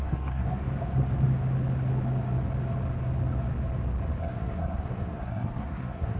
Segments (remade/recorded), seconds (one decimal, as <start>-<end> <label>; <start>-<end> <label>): 0.0-0.5 remade; 0.5-4.2 recorded; 4.2-6.2 remade